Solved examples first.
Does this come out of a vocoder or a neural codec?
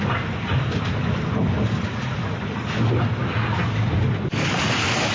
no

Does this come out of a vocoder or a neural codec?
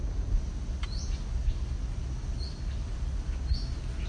no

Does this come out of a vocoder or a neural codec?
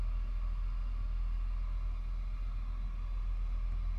no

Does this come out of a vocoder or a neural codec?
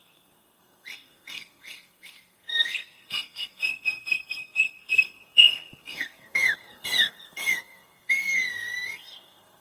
yes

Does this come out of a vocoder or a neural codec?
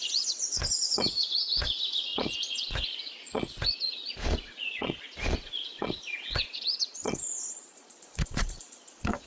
yes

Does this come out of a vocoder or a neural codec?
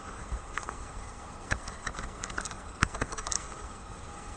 yes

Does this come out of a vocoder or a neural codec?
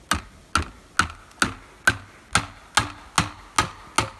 no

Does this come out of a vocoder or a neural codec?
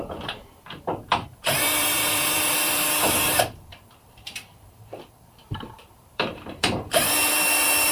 yes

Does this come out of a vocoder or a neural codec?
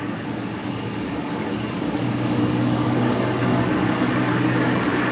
yes